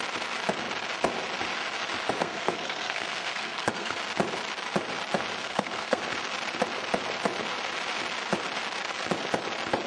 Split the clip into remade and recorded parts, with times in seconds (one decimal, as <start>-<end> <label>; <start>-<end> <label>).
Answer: 0.0-2.2 recorded; 2.2-4.0 remade; 4.0-5.4 recorded; 5.4-6.0 remade; 6.0-9.9 recorded